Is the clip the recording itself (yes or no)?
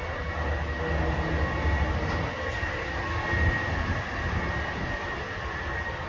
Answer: yes